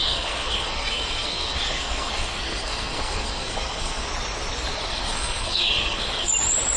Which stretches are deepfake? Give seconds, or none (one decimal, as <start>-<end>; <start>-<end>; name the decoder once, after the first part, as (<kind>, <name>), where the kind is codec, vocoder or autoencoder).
0.0-4.1 (codec, SNAC); 4.9-6.3